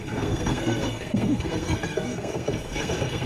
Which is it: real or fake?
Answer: fake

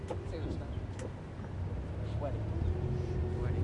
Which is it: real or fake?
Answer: real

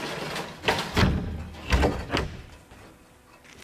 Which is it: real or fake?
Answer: real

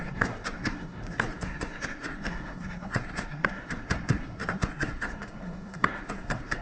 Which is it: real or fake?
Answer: fake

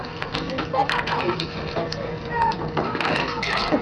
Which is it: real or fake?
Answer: fake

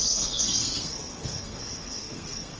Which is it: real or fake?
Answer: fake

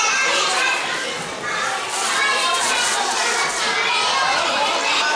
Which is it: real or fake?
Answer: real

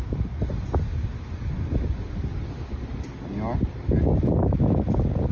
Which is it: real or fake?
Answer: real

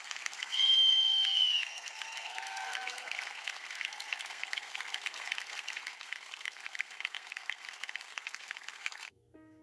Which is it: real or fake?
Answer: fake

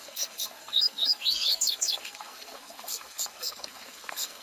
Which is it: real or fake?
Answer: fake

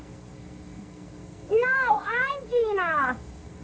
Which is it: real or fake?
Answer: fake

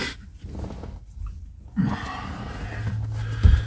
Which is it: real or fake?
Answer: real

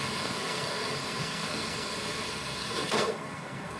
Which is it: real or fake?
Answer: fake